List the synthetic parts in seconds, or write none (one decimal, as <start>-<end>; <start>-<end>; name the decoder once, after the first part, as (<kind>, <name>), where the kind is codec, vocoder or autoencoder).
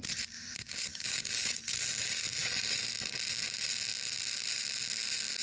0.9-1.6 (codec, DAC)